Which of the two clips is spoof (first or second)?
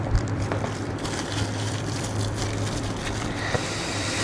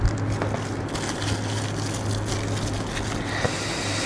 first